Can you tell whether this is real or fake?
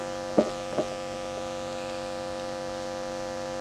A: real